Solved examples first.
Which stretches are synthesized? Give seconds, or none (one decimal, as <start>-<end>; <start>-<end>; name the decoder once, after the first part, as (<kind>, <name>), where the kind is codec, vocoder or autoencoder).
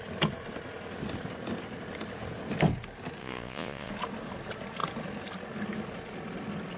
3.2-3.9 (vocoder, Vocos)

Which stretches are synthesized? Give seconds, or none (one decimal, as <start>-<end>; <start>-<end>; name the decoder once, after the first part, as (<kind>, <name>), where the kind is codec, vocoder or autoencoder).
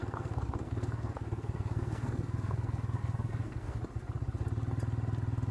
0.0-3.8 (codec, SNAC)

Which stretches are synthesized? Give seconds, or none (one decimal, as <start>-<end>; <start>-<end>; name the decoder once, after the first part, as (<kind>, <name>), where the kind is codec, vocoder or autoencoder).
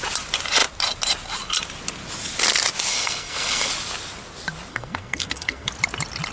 2.9-3.7 (codec, SNAC); 4.7-5.7